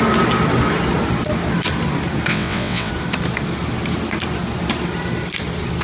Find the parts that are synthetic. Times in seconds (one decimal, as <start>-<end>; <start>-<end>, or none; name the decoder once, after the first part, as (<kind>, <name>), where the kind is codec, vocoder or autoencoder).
2.3-2.9 (vocoder, WaveNeXt)